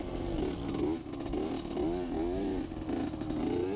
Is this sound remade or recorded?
recorded